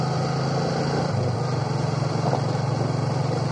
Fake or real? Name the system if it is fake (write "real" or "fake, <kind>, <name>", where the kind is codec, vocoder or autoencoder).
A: real